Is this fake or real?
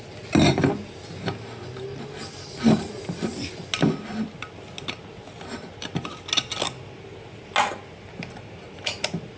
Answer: real